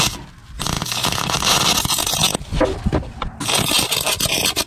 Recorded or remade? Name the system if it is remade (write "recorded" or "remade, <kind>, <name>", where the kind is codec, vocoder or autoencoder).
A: recorded